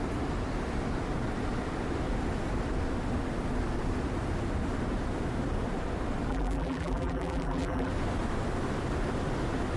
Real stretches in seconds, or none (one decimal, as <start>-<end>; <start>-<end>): 0.0-6.3; 7.9-9.8